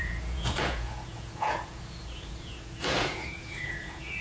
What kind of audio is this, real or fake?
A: fake